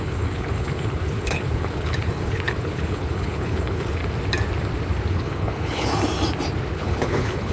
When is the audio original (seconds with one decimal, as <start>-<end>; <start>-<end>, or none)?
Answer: 4.0-5.1; 5.9-6.7